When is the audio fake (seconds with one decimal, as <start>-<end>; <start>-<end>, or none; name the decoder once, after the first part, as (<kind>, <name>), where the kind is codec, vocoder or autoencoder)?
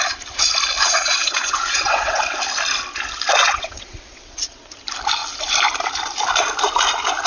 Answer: 0.8-2.2 (vocoder, WaveNeXt); 3.4-4.6